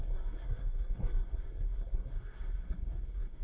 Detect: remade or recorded remade